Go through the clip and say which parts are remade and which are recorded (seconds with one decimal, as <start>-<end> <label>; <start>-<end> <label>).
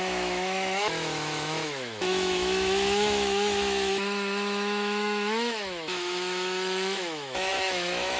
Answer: 0.0-8.2 remade